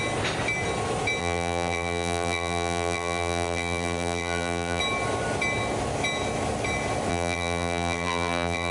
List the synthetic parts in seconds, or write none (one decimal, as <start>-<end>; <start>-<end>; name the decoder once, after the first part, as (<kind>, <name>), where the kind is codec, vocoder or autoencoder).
1.2-4.8 (vocoder, BigVGAN v2); 7.1-8.7